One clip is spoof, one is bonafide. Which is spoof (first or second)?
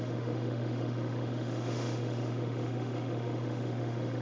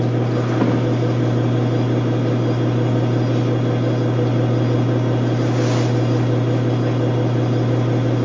first